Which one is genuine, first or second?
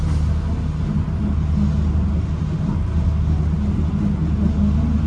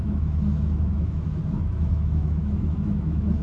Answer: first